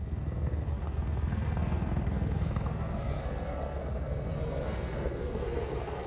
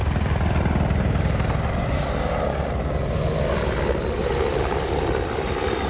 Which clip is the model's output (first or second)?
first